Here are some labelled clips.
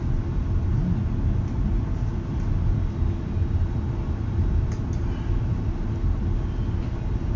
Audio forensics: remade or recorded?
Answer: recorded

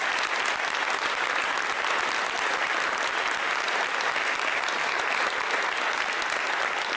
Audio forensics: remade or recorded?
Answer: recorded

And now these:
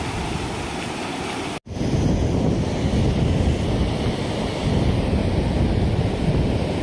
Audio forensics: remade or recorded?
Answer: recorded